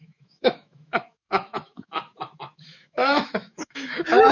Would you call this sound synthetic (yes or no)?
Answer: yes